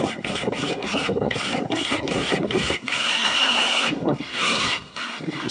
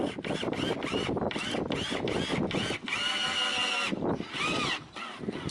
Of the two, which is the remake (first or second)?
first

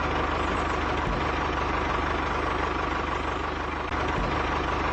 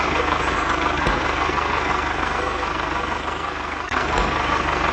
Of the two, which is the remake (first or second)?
second